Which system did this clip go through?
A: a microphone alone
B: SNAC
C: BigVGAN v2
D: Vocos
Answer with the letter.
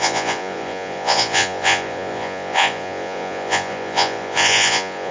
D